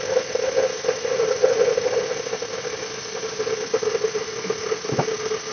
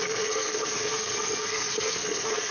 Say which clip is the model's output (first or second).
second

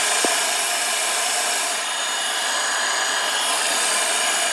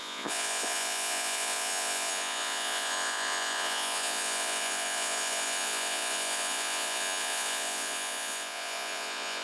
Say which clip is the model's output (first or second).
second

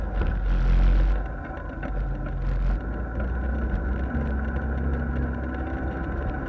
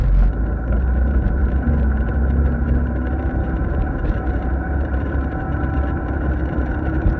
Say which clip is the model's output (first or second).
second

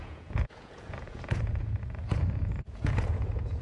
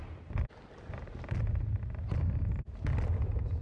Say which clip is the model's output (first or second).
first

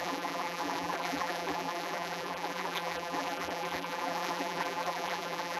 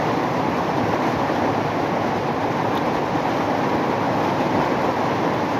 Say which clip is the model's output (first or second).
first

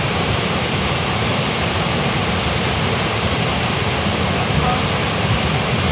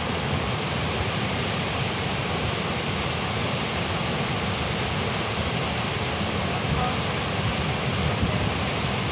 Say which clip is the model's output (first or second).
first